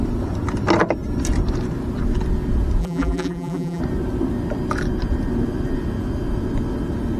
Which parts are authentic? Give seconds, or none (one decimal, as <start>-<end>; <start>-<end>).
0.0-2.8; 3.8-7.2